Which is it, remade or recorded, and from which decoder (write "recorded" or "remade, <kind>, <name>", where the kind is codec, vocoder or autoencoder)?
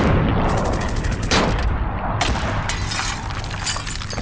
recorded